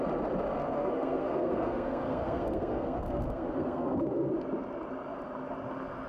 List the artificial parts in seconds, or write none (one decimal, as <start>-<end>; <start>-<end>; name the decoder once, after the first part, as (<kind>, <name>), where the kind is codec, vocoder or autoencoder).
0.6-4.3 (codec, SNAC)